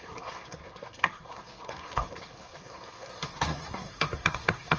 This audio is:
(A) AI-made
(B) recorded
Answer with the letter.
A